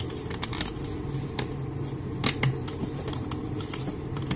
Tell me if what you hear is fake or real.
real